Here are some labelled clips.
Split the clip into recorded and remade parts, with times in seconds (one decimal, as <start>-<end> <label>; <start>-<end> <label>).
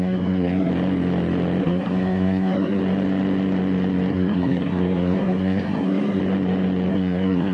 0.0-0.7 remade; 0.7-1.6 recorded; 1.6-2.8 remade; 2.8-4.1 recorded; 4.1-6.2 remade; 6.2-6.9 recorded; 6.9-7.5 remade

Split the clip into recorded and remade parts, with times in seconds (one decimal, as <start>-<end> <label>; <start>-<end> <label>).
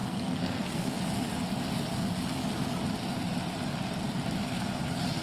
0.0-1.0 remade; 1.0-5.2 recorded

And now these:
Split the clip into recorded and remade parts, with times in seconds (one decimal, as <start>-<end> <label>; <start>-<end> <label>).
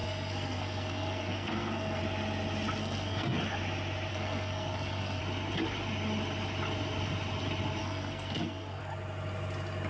0.0-2.0 remade; 2.0-2.8 recorded; 2.8-3.4 remade; 3.4-4.1 recorded; 4.1-5.2 remade; 5.2-7.8 recorded; 7.8-8.8 remade; 8.8-9.9 recorded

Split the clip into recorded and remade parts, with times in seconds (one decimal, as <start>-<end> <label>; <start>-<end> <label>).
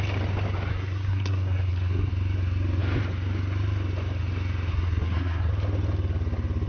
0.0-0.7 recorded; 0.7-2.1 remade; 2.1-4.7 recorded; 4.7-5.5 remade; 5.5-6.7 recorded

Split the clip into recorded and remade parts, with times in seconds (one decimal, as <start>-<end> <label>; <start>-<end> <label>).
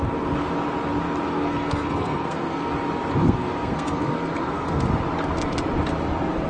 0.0-1.3 recorded; 1.3-2.7 remade; 2.7-3.2 recorded; 3.2-4.8 remade; 4.8-6.5 recorded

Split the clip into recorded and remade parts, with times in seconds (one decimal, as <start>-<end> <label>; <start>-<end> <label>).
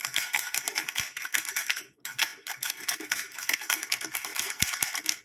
0.0-5.2 remade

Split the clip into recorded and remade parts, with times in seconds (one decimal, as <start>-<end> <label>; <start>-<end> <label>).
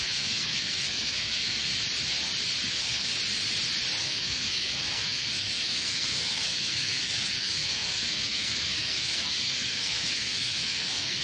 0.0-1.7 remade; 1.7-2.7 recorded; 2.7-3.1 remade; 3.1-4.0 recorded; 4.0-11.2 remade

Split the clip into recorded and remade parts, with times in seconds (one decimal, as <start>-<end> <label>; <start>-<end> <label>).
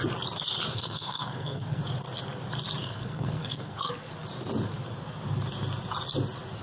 0.0-0.7 recorded; 0.7-1.8 remade; 1.8-2.8 recorded; 2.8-4.1 remade; 4.1-6.6 recorded